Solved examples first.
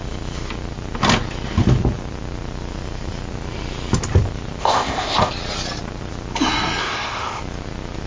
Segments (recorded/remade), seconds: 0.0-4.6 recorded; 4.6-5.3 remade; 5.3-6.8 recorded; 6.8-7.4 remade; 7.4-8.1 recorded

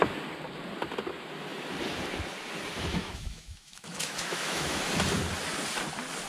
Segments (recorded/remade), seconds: 0.0-3.0 recorded; 3.0-4.8 remade; 4.8-6.3 recorded